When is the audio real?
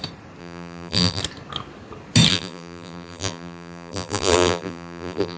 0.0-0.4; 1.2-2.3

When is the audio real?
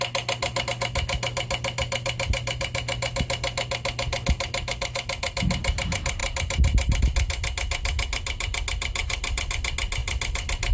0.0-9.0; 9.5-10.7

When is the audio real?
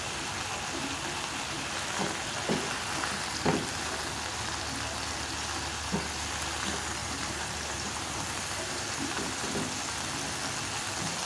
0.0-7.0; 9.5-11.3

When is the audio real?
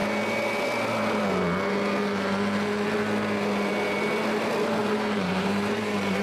0.0-4.8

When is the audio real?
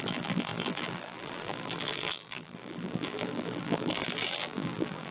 none